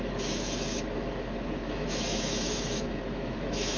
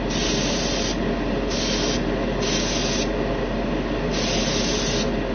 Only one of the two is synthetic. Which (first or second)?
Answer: first